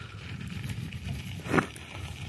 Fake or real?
fake